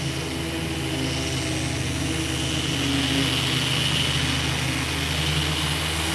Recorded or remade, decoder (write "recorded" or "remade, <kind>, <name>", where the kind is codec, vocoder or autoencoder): recorded